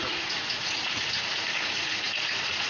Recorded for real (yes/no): no